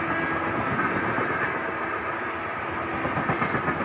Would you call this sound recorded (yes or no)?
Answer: yes